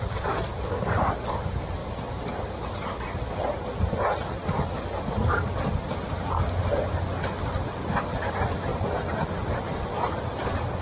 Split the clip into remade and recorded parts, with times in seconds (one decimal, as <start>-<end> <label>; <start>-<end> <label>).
0.0-8.7 recorded; 8.7-9.6 remade; 9.6-10.8 recorded